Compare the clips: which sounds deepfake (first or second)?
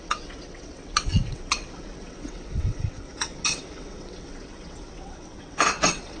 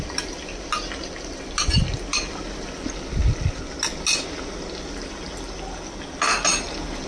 first